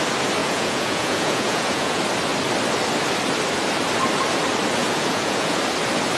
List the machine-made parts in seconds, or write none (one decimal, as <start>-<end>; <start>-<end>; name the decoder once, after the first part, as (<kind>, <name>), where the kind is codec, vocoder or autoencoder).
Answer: 0.4-2.0 (vocoder, Vocos); 4.8-5.6